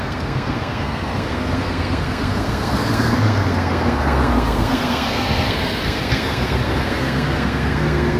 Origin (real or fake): fake